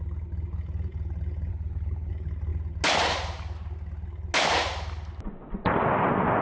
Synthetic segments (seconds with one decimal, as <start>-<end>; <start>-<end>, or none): 1.5-2.1